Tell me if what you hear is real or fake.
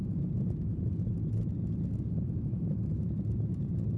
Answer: real